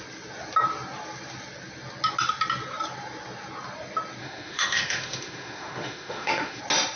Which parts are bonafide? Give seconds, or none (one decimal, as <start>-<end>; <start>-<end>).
0.0-4.2; 6.6-7.0